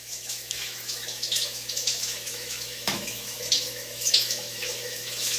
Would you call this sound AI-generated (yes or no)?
yes